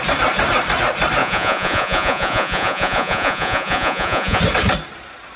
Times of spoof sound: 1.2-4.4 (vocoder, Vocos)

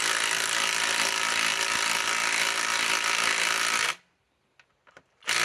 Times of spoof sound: none

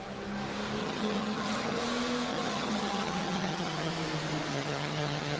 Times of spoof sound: 0.8-1.8 (vocoder, HiFi-GAN); 2.3-3.9; 4.5-5.4

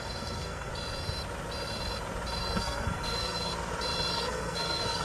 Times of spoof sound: 0.0-0.7 (codec, SNAC); 2.4-3.5; 4.1-5.0

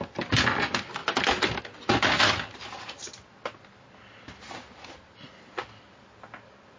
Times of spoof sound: none